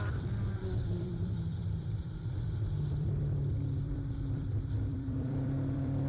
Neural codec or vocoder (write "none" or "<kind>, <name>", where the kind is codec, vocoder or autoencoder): vocoder, BigVGAN v2